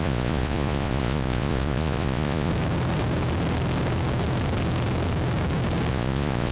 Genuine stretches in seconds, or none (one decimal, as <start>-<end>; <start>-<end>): 2.5-5.9